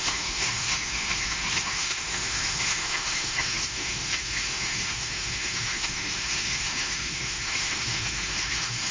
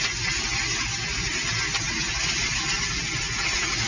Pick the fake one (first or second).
first